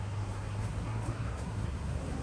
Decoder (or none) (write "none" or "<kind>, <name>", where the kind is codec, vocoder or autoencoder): codec, SNAC